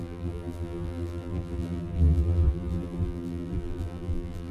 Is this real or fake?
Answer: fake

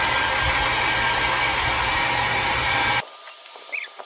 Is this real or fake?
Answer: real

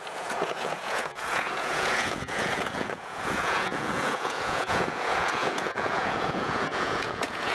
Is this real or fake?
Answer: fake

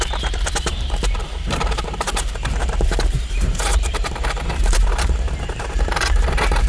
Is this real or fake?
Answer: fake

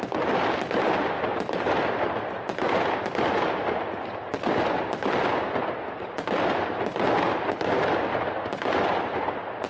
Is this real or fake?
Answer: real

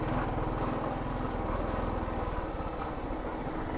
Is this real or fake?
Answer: real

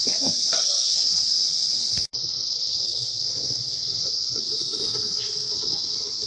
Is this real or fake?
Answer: fake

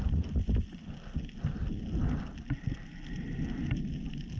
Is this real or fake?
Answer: real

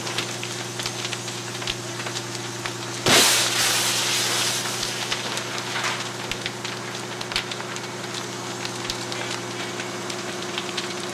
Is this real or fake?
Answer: real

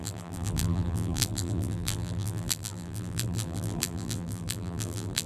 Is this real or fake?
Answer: fake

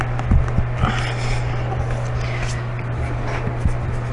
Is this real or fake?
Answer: real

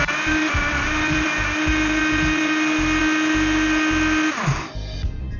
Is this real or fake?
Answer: real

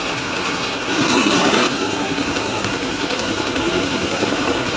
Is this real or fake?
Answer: fake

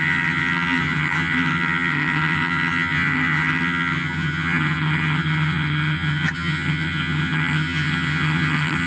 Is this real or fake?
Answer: fake